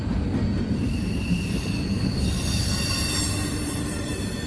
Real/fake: real